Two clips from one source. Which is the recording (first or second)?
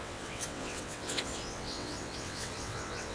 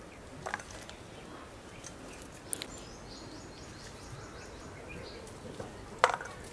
second